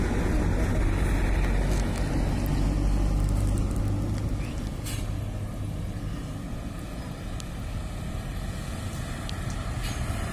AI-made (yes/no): no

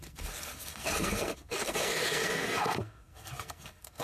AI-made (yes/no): yes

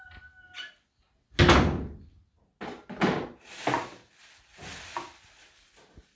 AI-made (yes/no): no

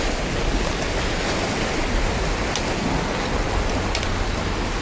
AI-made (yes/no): no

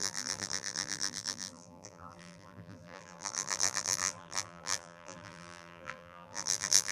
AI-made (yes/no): yes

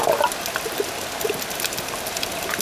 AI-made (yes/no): no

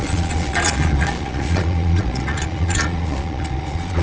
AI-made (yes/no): yes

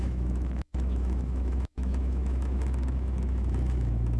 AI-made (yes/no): yes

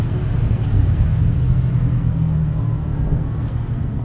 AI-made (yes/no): yes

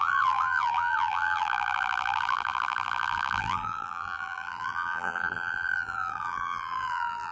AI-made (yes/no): yes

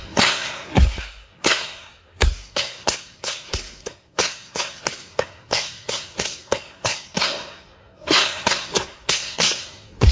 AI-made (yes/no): yes